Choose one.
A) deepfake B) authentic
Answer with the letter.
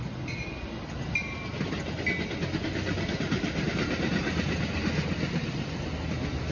B